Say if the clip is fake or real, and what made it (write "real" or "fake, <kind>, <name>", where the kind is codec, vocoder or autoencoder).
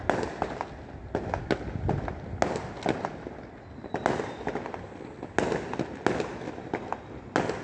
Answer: real